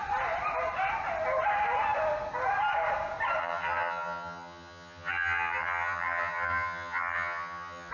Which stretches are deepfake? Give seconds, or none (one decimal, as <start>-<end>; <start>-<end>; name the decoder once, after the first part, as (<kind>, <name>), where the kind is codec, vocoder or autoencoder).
3.4-7.9 (vocoder, HiFi-GAN)